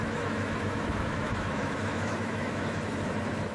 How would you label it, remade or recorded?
remade